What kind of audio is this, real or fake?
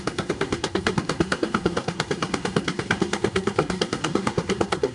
fake